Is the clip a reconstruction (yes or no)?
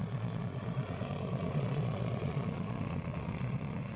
yes